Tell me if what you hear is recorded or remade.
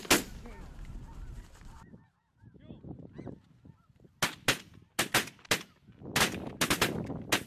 recorded